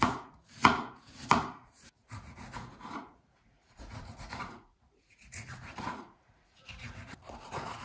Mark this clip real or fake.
fake